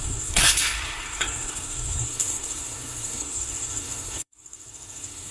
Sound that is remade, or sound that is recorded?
remade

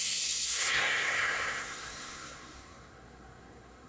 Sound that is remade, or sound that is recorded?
remade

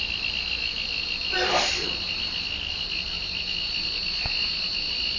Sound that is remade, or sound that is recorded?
recorded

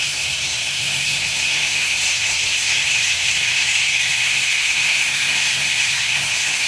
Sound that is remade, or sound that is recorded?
remade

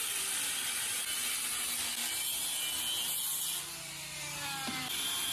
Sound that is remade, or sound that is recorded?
recorded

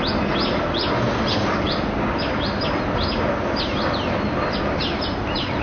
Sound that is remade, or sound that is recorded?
recorded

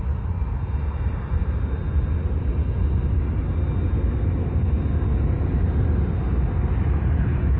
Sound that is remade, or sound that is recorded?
recorded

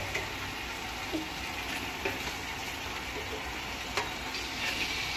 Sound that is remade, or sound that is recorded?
recorded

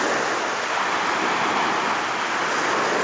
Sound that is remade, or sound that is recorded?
recorded